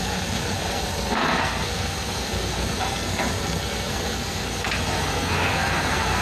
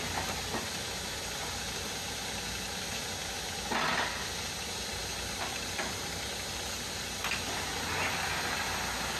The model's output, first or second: first